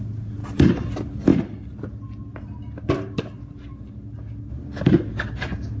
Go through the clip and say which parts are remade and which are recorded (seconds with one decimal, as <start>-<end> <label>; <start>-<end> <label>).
0.0-5.8 recorded